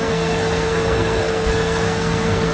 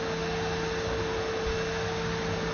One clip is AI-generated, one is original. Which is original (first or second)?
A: second